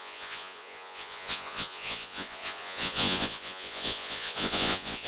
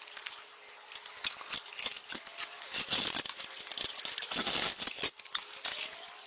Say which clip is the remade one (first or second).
first